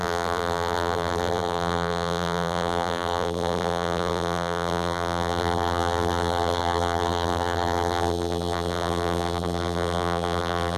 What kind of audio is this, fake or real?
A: fake